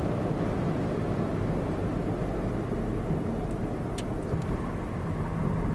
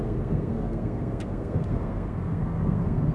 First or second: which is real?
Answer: first